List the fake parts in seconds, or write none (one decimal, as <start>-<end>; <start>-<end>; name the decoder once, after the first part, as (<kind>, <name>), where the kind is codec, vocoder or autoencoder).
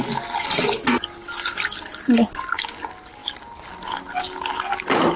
none